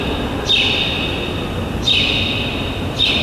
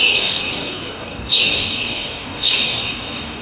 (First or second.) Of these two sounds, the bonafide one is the first